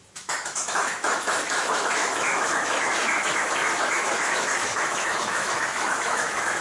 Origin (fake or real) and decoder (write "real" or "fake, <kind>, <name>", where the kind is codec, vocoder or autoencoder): fake, autoencoder, DAC-VAE